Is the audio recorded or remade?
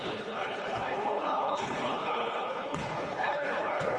remade